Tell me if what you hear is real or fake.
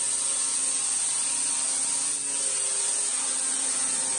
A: real